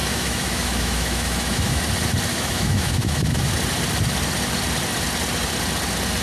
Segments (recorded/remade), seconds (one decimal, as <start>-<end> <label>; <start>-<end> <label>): 0.0-1.8 remade; 1.8-2.3 recorded; 2.3-3.5 remade; 3.5-6.2 recorded